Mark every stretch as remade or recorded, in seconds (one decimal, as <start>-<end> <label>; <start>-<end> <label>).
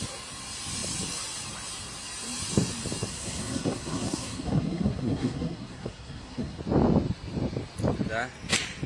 0.0-3.1 recorded; 3.1-6.6 remade; 6.6-8.9 recorded